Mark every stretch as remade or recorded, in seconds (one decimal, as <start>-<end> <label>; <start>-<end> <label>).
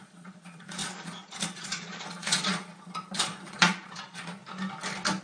0.0-4.4 remade; 4.4-5.2 recorded